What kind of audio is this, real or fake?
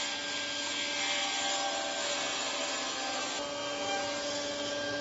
real